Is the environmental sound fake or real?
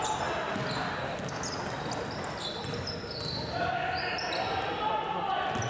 real